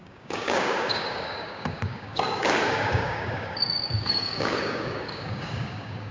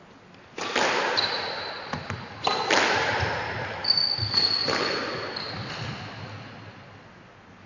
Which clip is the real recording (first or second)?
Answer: second